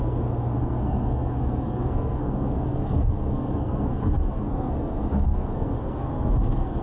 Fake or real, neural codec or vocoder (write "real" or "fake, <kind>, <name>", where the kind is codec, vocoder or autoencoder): fake, codec, SNAC